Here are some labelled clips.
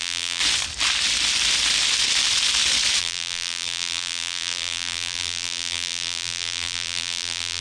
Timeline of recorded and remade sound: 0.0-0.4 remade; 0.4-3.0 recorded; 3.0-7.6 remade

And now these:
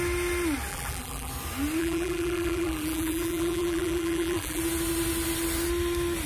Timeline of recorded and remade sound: 0.0-0.7 recorded; 0.7-1.3 remade; 1.3-1.8 recorded; 1.8-4.6 remade; 4.6-6.3 recorded

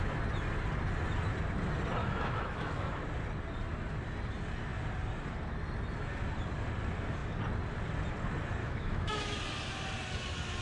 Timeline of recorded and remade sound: 0.0-2.0 recorded; 2.0-3.0 remade; 3.0-8.6 recorded; 8.6-9.4 remade; 9.4-10.6 recorded

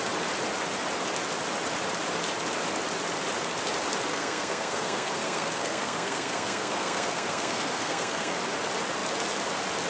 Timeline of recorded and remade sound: 0.0-4.1 recorded; 4.1-8.4 remade; 8.4-9.9 recorded

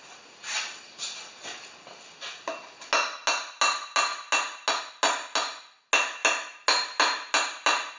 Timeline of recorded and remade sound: 0.0-8.0 recorded

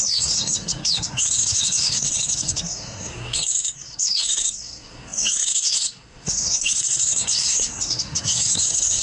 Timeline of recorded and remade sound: 0.0-9.0 remade

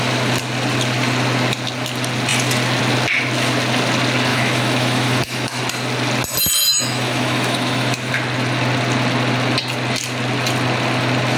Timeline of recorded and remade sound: 0.0-4.3 recorded; 4.3-5.6 remade; 5.6-6.7 recorded; 6.7-8.1 remade; 8.1-11.4 recorded

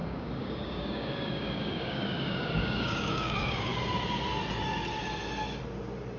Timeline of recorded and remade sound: 0.0-3.7 remade; 3.7-4.5 recorded; 4.5-4.9 remade; 4.9-6.2 recorded